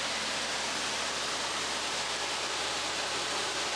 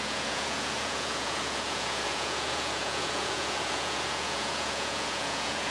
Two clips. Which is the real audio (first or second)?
first